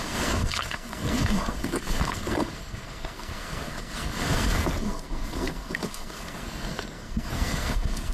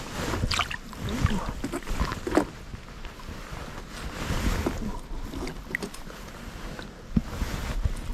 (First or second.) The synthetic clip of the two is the first